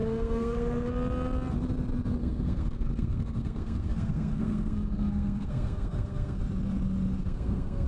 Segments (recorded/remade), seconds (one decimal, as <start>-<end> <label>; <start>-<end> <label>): 0.0-0.9 remade; 0.9-2.2 recorded; 2.2-6.4 remade; 6.4-7.2 recorded; 7.2-7.9 remade